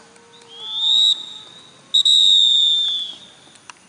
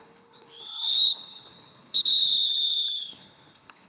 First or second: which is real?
first